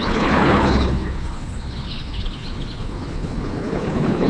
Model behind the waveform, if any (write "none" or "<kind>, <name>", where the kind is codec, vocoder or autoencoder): codec, HILCodec